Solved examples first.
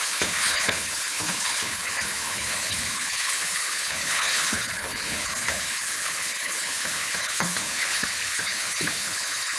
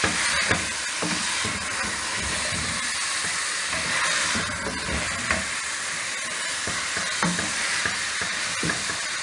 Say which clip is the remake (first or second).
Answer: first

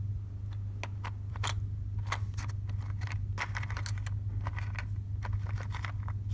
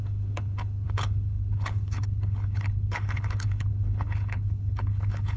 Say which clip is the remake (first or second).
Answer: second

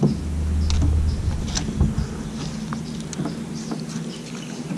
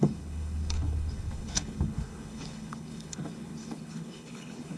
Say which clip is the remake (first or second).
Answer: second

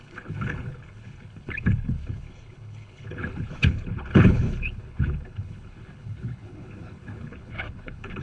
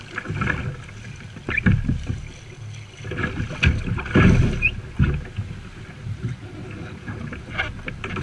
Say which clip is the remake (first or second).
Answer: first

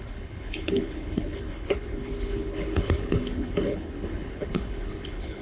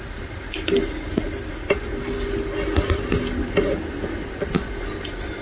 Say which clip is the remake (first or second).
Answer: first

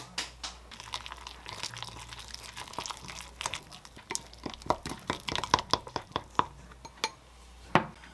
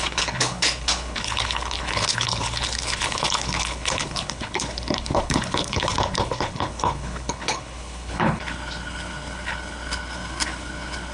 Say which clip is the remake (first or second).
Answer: second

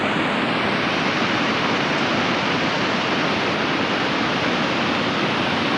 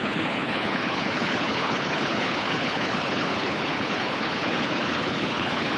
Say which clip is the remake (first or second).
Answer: second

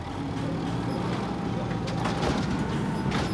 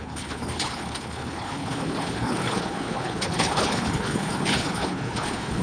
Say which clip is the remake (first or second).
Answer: second